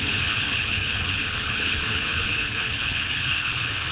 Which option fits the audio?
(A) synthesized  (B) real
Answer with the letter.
A